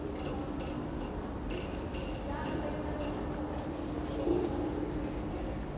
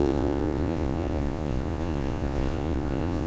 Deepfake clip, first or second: second